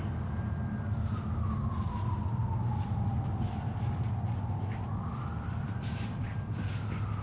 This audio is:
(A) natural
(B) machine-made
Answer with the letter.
A